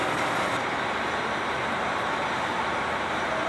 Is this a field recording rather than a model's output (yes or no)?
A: yes